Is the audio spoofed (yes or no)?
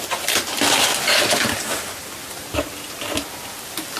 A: no